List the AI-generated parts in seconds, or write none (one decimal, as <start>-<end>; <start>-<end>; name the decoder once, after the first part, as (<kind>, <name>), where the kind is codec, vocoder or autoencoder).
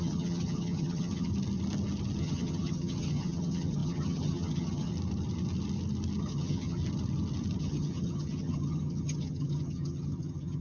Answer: 0.0-1.3 (vocoder, HiFi-GAN); 2.2-4.9; 6.2-6.8; 7.6-10.6